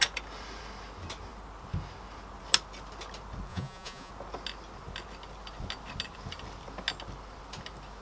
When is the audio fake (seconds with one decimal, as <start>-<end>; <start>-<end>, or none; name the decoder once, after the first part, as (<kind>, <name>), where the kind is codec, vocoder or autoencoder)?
3.5-4.1 (vocoder, Vocos)